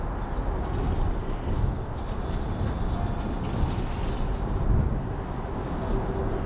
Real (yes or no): yes